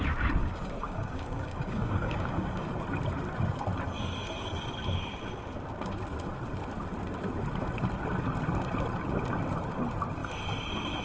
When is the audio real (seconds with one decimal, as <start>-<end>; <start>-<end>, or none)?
0.0-0.4; 2.7-11.0